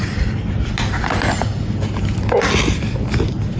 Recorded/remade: recorded